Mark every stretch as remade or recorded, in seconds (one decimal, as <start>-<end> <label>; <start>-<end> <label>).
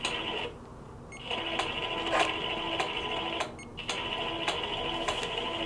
0.0-5.7 recorded